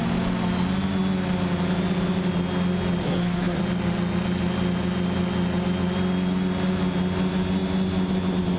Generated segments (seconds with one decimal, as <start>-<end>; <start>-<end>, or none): 3.0-3.6